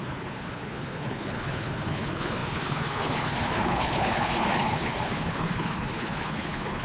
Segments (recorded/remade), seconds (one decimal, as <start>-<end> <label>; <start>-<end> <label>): 0.0-6.8 remade